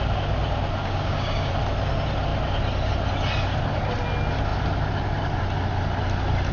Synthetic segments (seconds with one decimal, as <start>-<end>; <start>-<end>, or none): 0.8-1.5